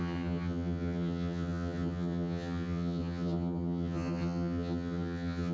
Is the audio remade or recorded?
remade